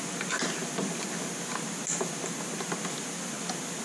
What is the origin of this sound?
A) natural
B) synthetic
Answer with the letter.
A